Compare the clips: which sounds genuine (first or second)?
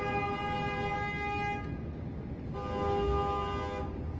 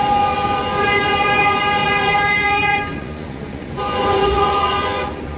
first